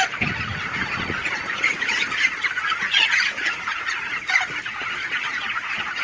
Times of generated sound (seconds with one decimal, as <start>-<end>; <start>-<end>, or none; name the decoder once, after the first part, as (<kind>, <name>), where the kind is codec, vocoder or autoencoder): 0.5-4.1 (vocoder, Vocos)